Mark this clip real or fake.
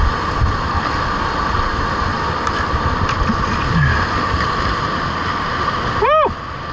real